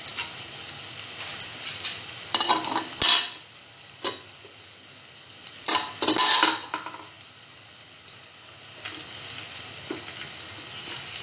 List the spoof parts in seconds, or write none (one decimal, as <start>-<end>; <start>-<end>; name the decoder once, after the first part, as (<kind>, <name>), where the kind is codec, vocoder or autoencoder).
none